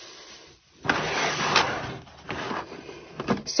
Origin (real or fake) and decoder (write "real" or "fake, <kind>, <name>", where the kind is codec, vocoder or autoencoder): real